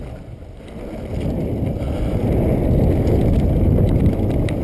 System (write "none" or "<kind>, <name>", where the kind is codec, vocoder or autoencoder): none